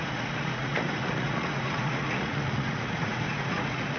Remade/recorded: remade